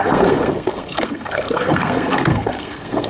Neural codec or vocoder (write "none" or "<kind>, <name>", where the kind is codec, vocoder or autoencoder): codec, SNAC